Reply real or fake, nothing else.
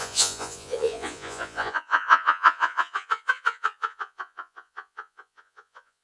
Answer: fake